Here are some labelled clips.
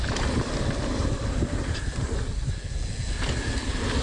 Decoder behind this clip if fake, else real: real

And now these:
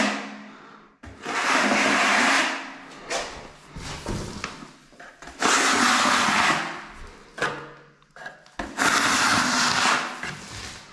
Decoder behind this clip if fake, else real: real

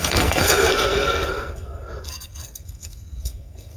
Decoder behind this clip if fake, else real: fake, codec, SNAC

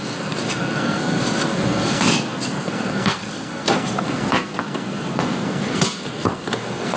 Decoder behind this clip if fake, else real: fake, codec, SNAC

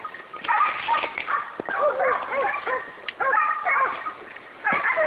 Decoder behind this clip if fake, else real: real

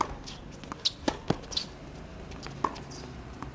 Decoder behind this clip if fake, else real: real